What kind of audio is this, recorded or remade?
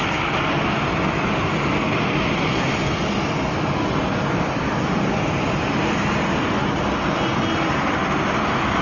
recorded